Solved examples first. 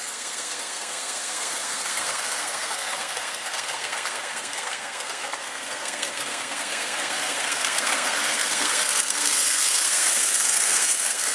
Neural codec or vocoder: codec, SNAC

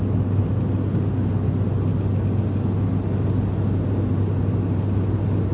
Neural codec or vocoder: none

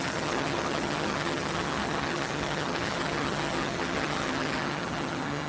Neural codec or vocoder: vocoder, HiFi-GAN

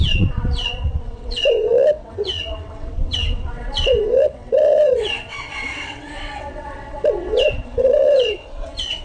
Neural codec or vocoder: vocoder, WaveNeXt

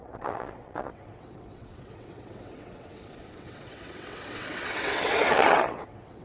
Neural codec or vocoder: vocoder, WaveNeXt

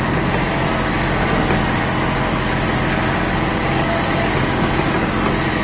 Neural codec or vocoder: none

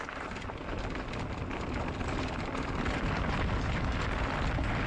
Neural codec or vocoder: none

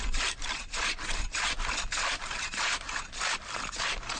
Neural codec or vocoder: none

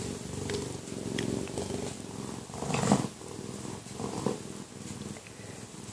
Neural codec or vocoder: none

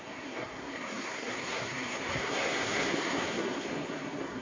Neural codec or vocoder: codec, SNAC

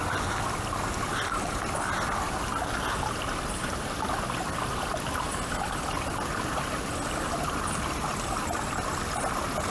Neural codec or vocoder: none